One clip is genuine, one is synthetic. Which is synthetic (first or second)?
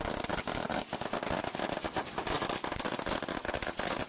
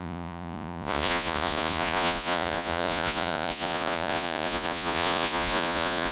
second